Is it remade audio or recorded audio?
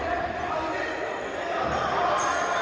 recorded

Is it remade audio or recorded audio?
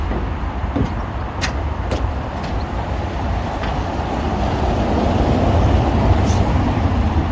remade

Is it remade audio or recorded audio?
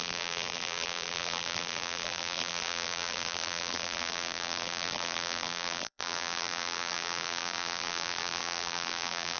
remade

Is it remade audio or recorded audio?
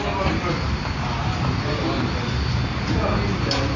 recorded